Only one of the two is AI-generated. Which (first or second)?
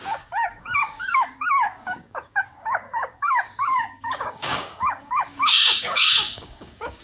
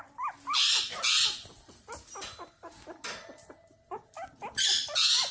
first